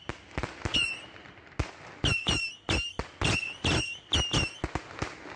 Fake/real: real